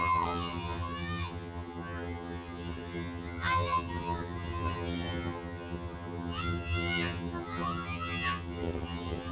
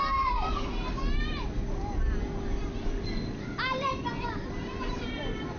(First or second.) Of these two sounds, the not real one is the first